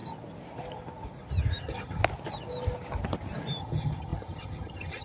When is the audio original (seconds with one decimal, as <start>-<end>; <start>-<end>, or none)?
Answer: 0.0-1.6; 2.0-3.6